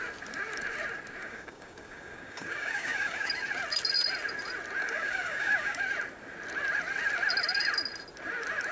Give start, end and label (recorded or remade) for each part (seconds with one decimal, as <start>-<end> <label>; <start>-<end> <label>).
0.0-1.2 recorded; 1.2-3.3 remade; 3.3-4.8 recorded; 4.8-5.8 remade; 5.8-8.7 recorded